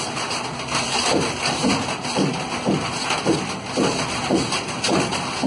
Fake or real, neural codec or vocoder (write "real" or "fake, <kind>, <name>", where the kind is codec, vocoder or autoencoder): real